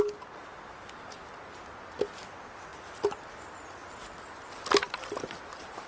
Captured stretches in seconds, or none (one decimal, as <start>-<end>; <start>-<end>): 0.0-5.9

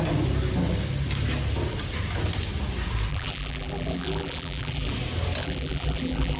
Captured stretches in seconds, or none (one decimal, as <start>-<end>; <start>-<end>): 0.0-3.1; 4.9-5.4

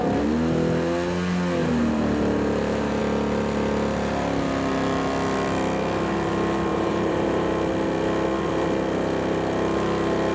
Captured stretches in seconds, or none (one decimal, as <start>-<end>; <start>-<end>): 0.0-1.6; 3.0-6.7; 7.5-10.3

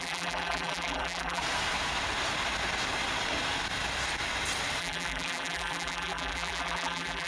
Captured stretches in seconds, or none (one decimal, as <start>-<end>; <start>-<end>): 1.4-4.8

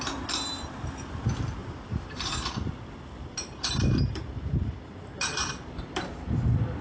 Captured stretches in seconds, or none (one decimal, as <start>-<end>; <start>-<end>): 0.0-1.6; 2.7-6.8

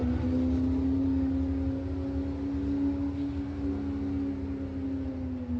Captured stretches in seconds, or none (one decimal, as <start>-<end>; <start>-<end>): 0.0-5.6

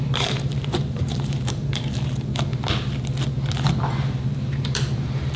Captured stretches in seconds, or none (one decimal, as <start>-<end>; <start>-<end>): 2.5-4.1